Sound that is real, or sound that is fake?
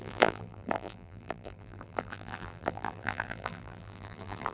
fake